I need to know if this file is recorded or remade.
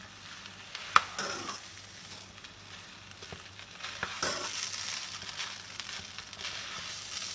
recorded